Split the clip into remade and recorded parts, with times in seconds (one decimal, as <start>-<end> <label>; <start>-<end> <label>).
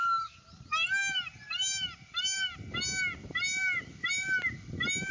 0.0-5.1 recorded